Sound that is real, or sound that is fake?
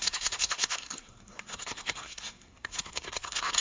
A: fake